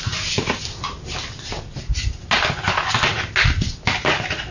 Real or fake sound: real